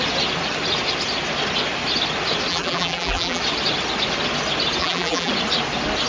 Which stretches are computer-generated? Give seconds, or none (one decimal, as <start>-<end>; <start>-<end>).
2.5-3.4; 4.8-5.3